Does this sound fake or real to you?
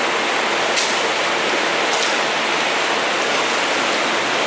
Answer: real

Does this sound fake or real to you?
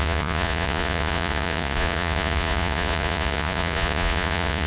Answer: fake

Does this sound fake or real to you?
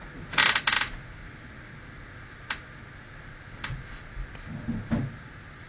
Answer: real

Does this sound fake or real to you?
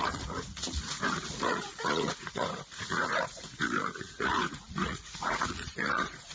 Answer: fake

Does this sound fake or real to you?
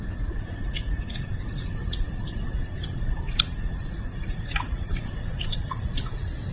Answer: fake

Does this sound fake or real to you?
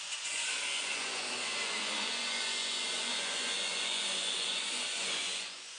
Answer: fake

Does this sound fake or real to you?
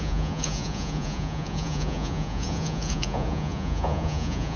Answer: fake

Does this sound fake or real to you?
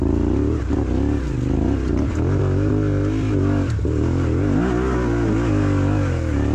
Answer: real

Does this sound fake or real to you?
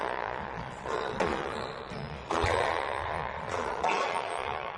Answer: fake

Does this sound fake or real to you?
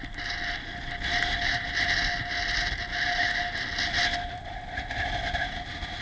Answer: real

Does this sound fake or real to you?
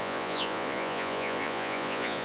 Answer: fake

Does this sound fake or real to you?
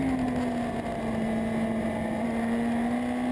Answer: real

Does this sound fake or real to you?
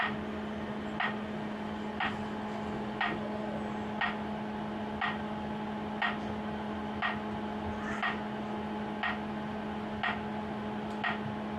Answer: real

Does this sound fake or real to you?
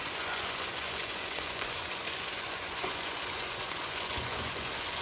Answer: fake